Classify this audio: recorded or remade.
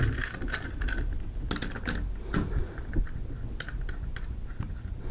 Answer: recorded